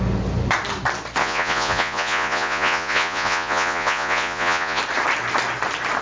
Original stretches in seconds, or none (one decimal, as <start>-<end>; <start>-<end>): 0.0-1.2; 4.8-6.0